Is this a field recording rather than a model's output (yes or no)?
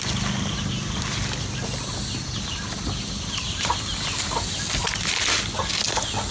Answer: yes